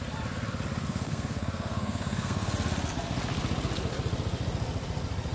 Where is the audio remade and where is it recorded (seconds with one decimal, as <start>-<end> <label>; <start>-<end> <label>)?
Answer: 0.0-0.9 recorded; 0.9-2.5 remade; 2.5-5.3 recorded